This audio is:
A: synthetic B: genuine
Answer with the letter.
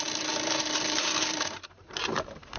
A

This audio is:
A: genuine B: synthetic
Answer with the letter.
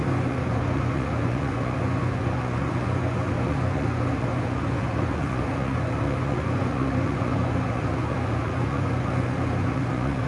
B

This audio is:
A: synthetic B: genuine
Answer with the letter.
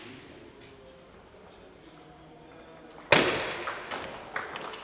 B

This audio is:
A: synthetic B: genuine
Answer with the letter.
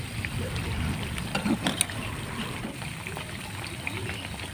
B